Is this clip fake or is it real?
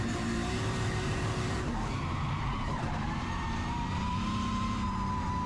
fake